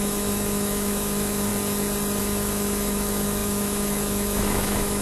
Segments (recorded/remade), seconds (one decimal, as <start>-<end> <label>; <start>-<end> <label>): 0.0-1.5 remade; 1.5-2.2 recorded; 2.2-5.0 remade